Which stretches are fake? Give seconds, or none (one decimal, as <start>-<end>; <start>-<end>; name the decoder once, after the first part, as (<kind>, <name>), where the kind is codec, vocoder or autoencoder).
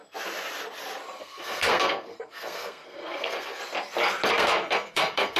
1.2-3.6 (codec, SNAC); 4.3-5.4